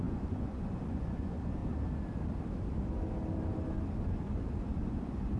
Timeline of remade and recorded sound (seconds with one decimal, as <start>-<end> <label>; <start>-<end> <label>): 0.0-1.6 remade; 1.6-4.8 recorded; 4.8-5.4 remade